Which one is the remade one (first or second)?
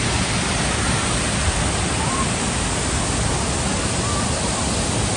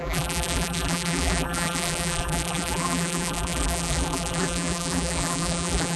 second